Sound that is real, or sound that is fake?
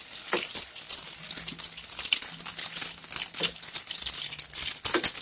real